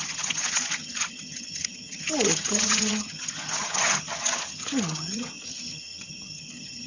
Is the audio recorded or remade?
remade